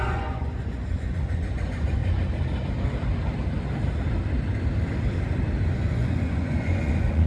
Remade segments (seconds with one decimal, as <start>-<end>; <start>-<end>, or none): 0.0-2.0; 5.7-7.3